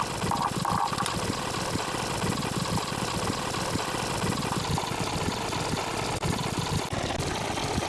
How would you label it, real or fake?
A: real